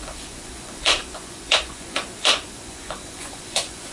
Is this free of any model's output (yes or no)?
no